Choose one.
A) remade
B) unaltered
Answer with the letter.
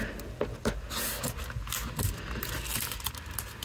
B